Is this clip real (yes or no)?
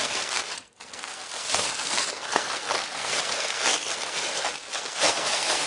no